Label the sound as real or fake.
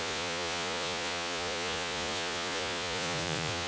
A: fake